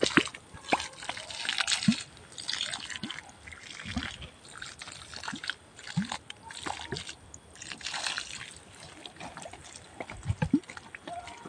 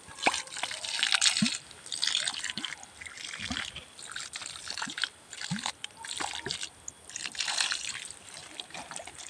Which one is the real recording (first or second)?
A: first